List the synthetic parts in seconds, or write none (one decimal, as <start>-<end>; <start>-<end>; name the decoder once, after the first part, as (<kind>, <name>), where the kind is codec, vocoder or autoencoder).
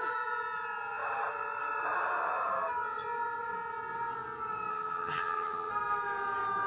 4.7-5.7 (vocoder, HiFi-GAN)